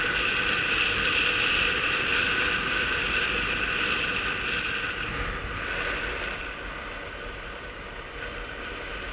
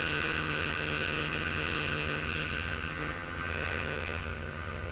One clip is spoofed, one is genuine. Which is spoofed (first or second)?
second